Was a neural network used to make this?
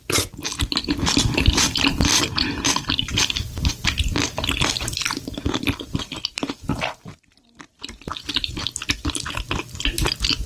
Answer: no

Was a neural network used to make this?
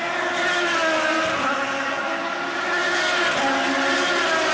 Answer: no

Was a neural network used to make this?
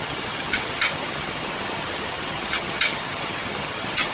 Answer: yes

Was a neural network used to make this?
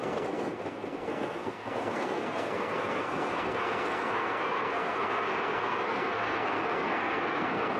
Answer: yes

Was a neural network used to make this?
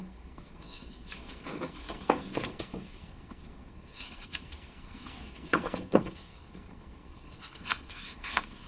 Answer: yes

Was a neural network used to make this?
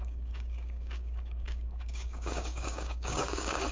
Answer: yes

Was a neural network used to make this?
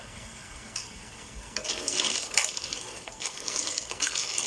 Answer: yes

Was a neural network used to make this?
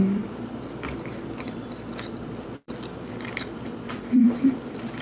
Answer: yes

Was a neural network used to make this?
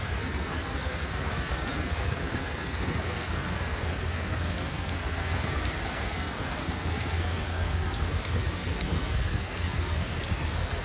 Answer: yes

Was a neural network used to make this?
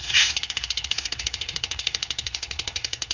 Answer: yes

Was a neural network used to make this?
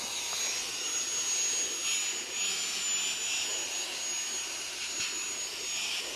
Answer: no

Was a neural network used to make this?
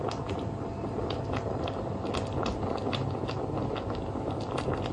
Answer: no